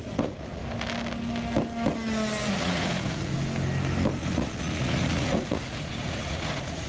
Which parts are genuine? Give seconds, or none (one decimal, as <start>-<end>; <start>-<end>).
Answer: 0.6-2.5; 3.3-4.2